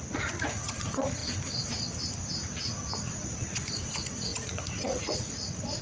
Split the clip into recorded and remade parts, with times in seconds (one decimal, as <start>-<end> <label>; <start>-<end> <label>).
0.0-1.2 remade; 1.2-2.9 recorded; 2.9-5.8 remade